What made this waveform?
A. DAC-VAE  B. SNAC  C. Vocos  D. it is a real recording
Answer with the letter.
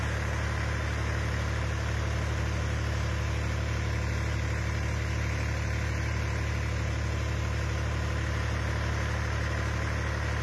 D